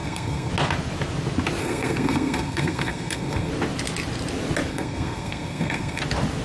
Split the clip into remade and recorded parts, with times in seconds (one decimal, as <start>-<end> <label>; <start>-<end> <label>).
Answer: 0.0-0.5 remade; 0.5-1.6 recorded; 1.6-3.5 remade; 3.5-4.7 recorded; 4.7-6.0 remade; 6.0-6.4 recorded